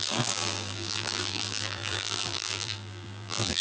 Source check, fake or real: fake